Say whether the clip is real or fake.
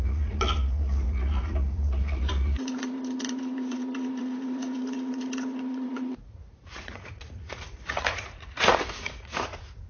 fake